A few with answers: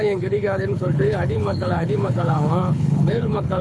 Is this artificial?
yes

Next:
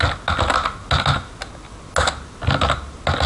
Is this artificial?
no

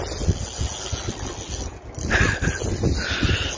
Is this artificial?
no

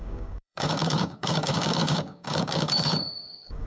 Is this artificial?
yes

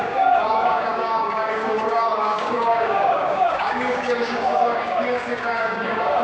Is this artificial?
yes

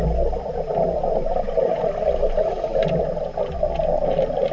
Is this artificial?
no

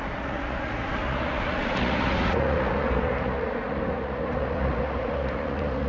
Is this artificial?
yes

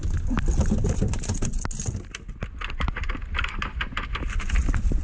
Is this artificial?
no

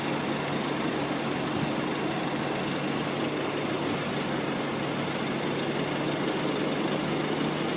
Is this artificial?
no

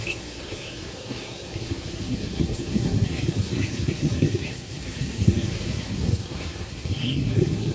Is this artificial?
yes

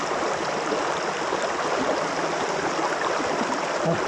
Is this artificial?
no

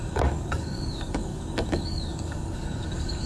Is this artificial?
yes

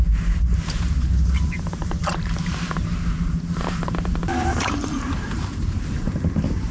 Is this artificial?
yes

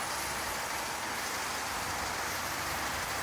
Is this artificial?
no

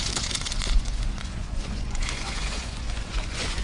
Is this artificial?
yes